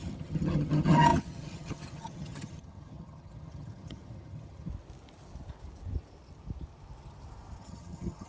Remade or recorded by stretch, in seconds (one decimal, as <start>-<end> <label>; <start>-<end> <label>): 0.0-4.7 remade; 4.7-7.6 recorded; 7.6-8.3 remade